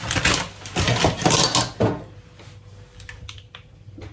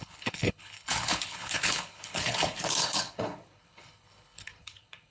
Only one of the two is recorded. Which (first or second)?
first